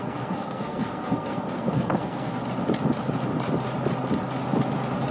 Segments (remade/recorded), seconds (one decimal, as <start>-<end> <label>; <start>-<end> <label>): 0.0-2.4 remade; 2.4-5.1 recorded